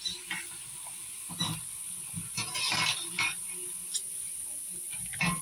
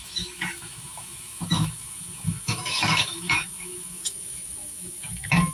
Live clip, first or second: first